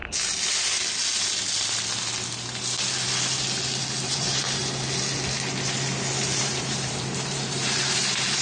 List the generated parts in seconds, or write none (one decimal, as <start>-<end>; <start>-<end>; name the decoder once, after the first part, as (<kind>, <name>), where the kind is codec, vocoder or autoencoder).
4.0-4.6 (vocoder, BigVGAN v2); 6.4-8.4